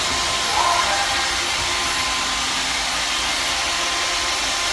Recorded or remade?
recorded